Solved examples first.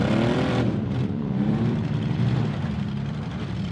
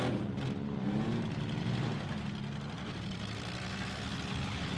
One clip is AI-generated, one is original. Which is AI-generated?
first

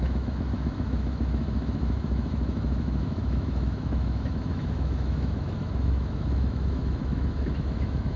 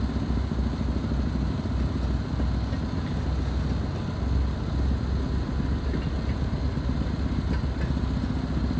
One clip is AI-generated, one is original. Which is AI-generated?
first